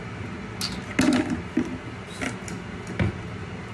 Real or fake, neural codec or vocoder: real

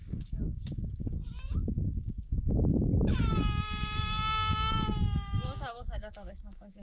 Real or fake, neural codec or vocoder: fake, codec, DAC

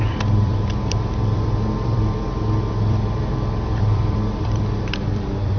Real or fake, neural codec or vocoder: fake, vocoder, BigVGAN v2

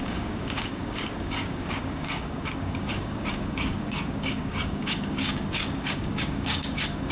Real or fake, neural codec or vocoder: fake, codec, DAC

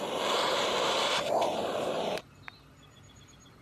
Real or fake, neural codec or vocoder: real